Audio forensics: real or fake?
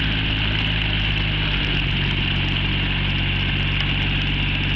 real